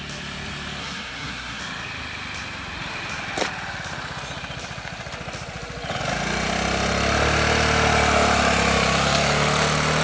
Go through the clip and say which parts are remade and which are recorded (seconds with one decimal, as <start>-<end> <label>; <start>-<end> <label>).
0.0-0.8 recorded; 0.8-1.6 remade; 1.6-10.0 recorded